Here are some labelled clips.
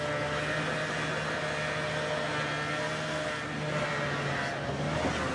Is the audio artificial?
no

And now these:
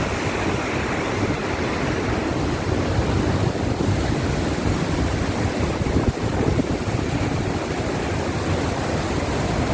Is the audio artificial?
no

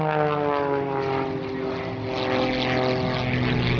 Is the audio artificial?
no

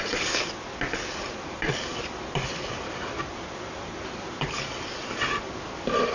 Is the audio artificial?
no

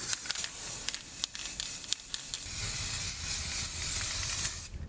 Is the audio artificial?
no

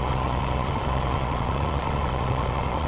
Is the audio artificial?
yes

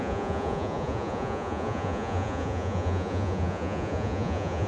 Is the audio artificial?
yes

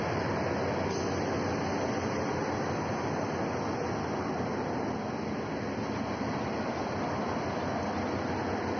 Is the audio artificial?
no